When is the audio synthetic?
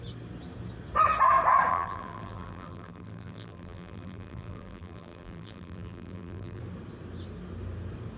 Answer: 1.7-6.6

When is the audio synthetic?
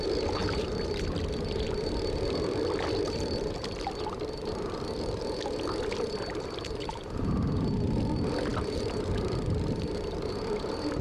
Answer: 0.4-5.2